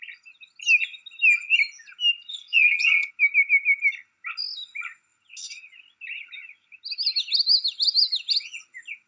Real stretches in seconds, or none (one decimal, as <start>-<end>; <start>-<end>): 0.0-2.3; 3.1-9.1